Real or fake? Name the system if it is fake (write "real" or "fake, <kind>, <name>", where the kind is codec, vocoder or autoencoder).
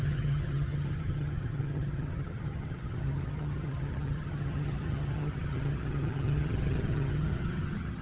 fake, vocoder, HiFi-GAN